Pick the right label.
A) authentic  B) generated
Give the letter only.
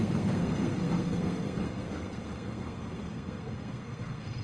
B